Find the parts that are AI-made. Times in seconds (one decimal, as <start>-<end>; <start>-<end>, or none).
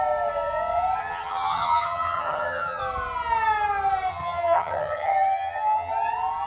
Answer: 1.0-2.8; 4.1-5.9